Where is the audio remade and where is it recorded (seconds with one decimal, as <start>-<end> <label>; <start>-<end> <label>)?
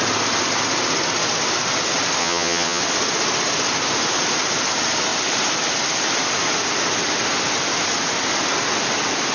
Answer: 0.0-2.2 recorded; 2.2-2.8 remade; 2.8-9.3 recorded